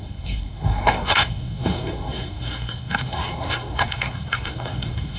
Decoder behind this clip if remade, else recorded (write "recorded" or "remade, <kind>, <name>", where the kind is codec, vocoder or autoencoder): remade, codec, SNAC